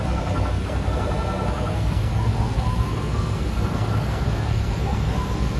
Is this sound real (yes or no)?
no